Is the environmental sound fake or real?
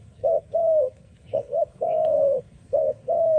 fake